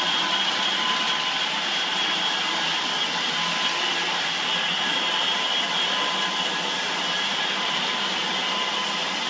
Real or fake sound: real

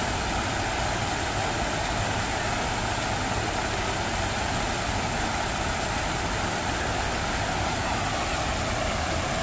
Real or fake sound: real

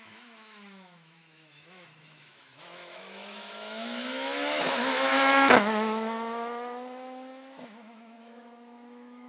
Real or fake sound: fake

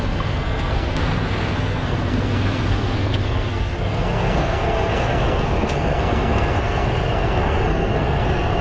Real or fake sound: fake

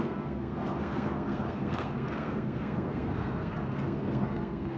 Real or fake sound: fake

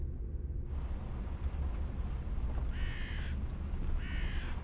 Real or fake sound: real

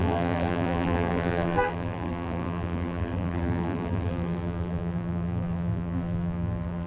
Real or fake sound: fake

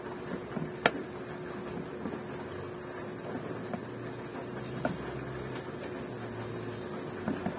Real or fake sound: real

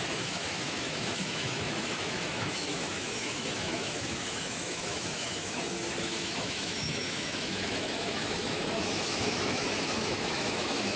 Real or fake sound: fake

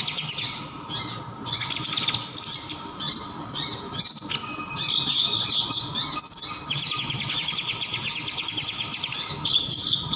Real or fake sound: real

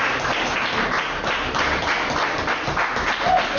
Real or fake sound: real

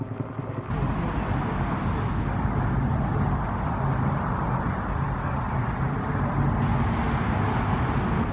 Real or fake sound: real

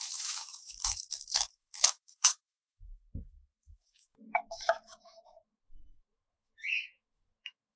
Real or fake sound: fake